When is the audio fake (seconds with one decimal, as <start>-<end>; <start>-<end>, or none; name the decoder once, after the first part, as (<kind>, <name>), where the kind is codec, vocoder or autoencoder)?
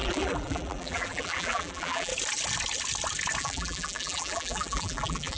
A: 0.0-2.1 (vocoder, BigVGAN v2); 3.4-5.4